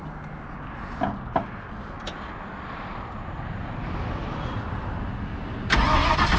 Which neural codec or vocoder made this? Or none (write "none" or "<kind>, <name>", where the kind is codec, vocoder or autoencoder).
none